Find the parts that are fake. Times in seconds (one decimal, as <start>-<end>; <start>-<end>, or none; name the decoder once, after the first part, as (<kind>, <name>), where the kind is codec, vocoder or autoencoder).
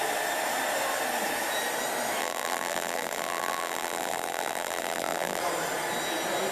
2.2-5.4 (vocoder, BigVGAN v2)